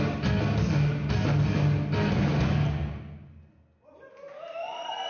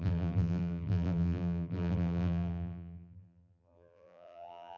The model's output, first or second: second